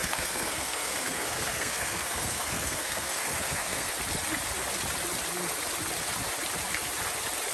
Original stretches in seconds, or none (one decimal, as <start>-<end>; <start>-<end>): 3.9-7.5